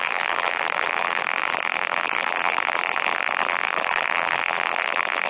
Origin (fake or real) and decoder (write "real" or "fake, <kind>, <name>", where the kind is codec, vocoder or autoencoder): fake, vocoder, BigVGAN v2